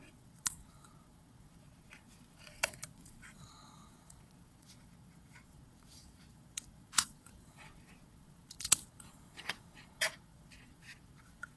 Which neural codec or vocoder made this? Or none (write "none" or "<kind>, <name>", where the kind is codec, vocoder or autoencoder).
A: vocoder, Vocos